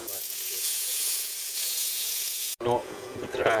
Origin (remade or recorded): remade